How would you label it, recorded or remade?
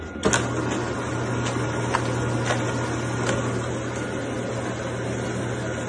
recorded